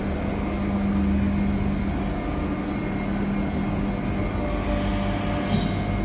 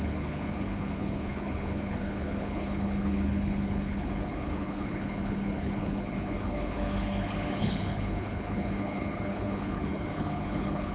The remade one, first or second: second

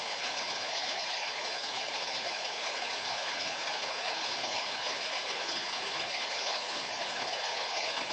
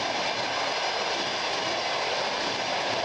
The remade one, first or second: first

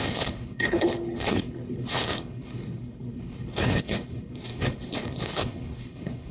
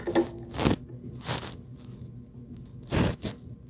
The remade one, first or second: first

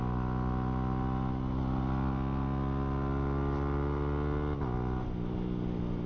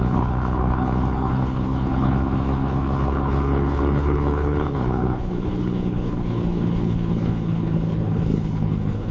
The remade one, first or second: second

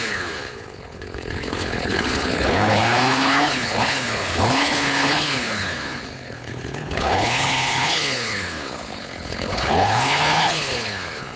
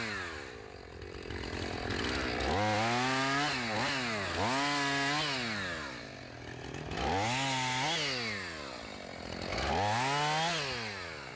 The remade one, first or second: first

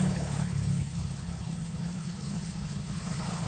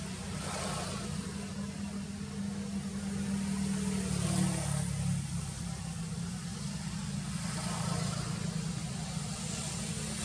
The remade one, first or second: first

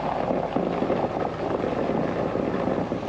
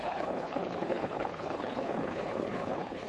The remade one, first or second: second